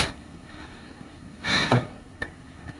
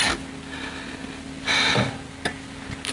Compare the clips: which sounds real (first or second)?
second